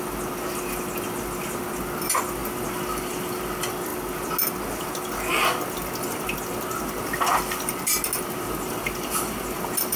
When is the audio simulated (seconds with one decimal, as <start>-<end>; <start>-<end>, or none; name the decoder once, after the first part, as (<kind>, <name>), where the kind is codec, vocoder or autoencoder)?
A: none